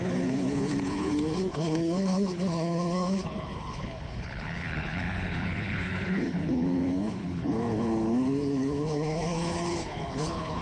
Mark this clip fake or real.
fake